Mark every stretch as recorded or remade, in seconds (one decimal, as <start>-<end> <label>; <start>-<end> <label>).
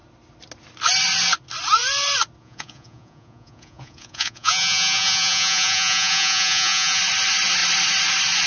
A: 0.0-2.4 recorded; 2.4-7.0 remade; 7.0-8.5 recorded